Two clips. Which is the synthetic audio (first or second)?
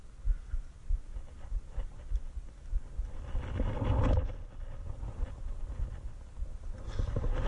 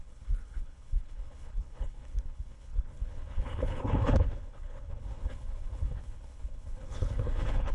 second